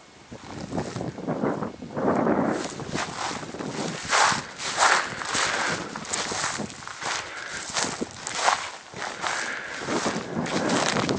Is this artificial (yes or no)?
no